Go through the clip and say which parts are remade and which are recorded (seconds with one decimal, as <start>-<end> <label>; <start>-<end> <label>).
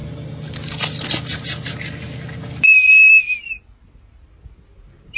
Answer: 0.0-5.2 recorded